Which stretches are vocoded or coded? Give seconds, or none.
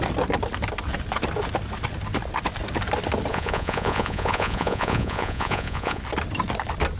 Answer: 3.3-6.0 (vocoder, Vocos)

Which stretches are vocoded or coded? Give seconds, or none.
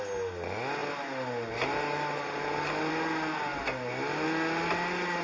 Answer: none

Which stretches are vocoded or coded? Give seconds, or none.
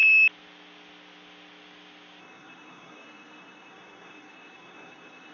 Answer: 2.2-5.3 (codec, SNAC)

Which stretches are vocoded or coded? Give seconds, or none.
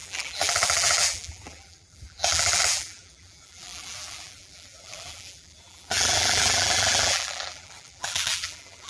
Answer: 0.0-8.9 (vocoder, BigVGAN v2)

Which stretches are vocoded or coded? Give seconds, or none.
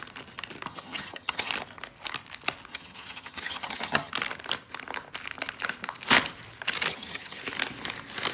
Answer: 0.7-1.5 (vocoder, HiFi-GAN); 2.7-4.1; 6.9-7.4